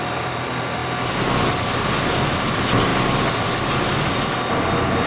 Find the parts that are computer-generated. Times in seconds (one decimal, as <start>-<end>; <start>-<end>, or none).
0.0-0.8; 2.5-2.9; 3.8-5.1